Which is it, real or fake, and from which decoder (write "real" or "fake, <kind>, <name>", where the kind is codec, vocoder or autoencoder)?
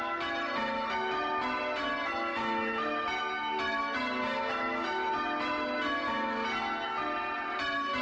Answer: real